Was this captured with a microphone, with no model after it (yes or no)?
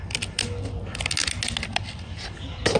yes